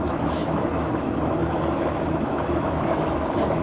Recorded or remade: remade